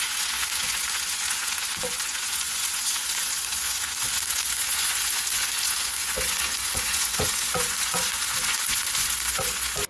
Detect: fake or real fake